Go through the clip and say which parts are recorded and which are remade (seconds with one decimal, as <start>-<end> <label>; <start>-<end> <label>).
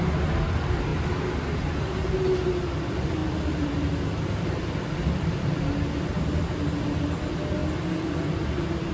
0.0-3.2 recorded; 3.2-5.6 remade; 5.6-8.9 recorded